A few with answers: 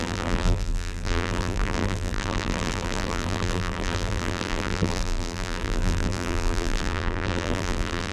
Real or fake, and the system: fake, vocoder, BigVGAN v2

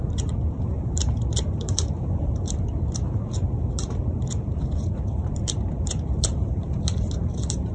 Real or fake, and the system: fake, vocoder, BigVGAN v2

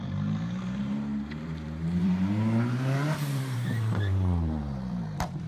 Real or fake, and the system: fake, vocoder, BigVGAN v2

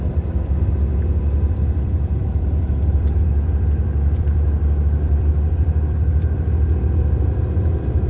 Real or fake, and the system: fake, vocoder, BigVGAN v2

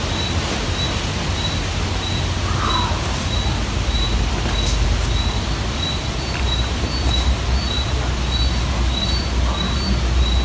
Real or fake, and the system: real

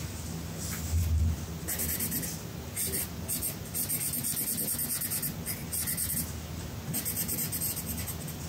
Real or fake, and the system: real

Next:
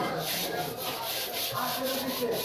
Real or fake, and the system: real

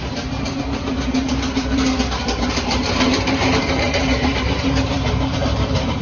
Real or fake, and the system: fake, vocoder, BigVGAN v2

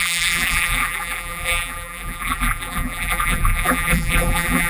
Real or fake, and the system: fake, vocoder, BigVGAN v2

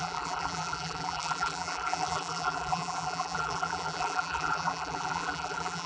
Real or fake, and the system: fake, vocoder, BigVGAN v2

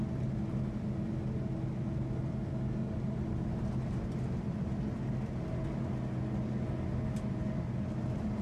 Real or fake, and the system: real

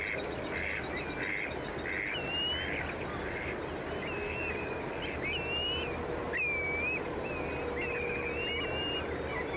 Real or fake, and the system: real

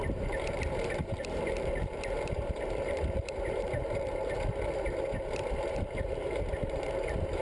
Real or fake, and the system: fake, vocoder, BigVGAN v2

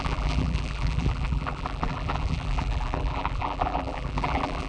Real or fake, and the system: fake, vocoder, BigVGAN v2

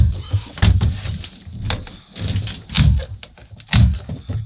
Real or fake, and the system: real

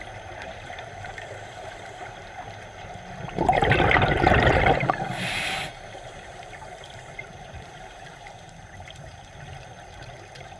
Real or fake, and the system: fake, vocoder, BigVGAN v2